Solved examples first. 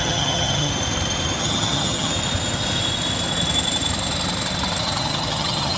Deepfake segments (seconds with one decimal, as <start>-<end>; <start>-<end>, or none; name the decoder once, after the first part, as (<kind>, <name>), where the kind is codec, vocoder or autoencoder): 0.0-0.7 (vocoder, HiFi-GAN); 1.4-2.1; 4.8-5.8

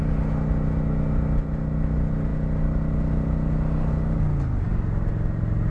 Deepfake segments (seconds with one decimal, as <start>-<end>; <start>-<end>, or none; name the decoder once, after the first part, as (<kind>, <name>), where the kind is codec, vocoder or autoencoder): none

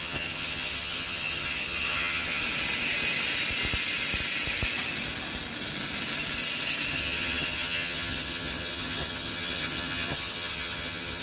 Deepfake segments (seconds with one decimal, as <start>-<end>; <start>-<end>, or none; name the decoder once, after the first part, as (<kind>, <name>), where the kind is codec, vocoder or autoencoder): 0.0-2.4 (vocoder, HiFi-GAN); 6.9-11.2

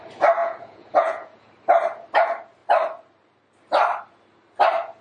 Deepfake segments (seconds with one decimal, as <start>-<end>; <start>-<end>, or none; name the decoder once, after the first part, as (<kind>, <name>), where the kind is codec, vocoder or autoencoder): 0.4-1.5 (vocoder, Vocos)

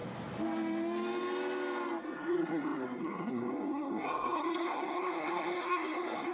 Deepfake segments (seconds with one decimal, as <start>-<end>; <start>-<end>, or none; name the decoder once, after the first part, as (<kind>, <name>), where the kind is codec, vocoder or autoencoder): 2.0-6.3 (codec, SNAC)

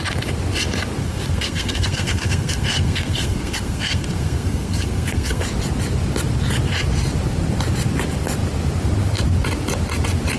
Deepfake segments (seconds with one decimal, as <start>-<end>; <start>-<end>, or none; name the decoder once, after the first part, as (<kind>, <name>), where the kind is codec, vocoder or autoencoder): 1.0-5.4 (codec, SNAC)

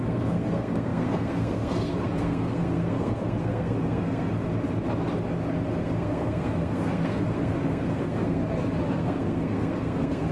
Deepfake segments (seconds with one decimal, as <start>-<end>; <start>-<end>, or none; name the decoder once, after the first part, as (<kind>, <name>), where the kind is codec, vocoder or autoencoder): 0.0-4.3 (codec, SNAC); 5.8-8.4; 8.9-10.3